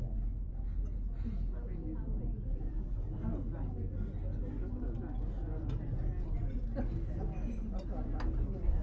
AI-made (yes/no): no